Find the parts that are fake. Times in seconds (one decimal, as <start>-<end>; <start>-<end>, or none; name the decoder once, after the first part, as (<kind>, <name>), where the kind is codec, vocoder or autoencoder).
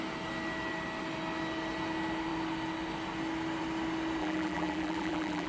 4.2-5.5 (vocoder, BigVGAN v2)